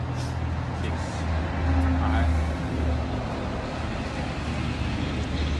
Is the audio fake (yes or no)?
no